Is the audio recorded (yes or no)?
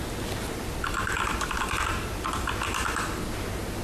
yes